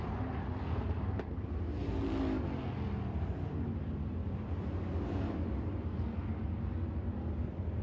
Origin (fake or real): real